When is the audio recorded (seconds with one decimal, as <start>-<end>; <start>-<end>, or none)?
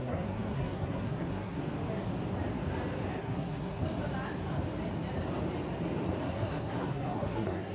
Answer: 1.6-3.2; 3.8-6.2